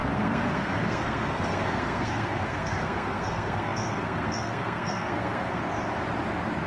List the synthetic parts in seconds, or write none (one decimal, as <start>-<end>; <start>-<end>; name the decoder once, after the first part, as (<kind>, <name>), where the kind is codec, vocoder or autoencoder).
0.0-5.6 (codec, SNAC)

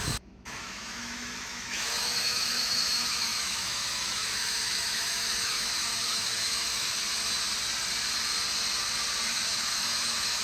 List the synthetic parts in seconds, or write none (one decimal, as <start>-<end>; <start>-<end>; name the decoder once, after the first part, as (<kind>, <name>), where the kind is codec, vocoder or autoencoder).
0.0-7.0 (autoencoder, DAC-VAE); 9.3-10.4

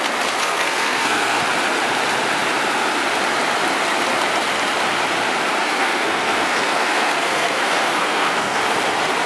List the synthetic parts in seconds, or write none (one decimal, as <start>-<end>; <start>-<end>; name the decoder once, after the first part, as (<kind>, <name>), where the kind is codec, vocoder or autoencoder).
0.4-1.4 (codec, SNAC); 5.6-8.6

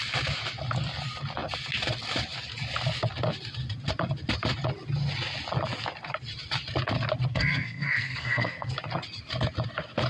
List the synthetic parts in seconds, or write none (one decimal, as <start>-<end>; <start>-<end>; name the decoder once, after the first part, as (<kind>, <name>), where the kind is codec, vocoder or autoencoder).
7.3-8.7 (codec, SNAC)

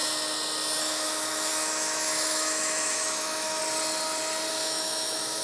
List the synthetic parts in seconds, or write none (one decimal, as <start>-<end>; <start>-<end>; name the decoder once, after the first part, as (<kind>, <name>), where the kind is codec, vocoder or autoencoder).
0.8-3.6 (autoencoder, DAC-VAE); 4.5-5.4

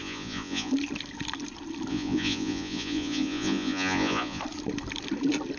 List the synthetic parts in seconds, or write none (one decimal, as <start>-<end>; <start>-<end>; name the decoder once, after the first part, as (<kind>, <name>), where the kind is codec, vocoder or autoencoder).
0.0-0.7 (vocoder, Vocos); 1.9-4.4